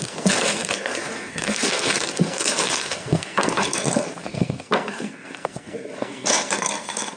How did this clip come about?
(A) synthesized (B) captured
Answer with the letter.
A